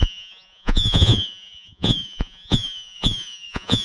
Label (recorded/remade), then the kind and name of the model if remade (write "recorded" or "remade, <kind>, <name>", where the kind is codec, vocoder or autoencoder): remade, vocoder, Vocos